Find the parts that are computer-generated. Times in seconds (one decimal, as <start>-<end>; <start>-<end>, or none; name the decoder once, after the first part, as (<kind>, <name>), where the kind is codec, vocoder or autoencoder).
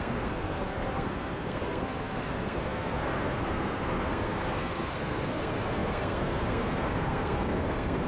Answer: 0.0-8.1 (codec, SNAC)